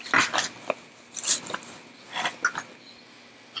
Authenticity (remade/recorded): recorded